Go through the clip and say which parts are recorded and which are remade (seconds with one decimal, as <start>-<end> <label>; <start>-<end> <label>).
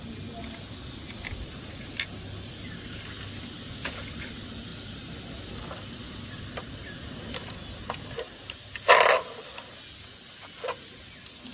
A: 0.0-11.5 recorded